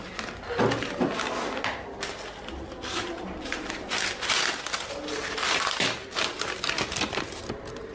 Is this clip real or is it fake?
real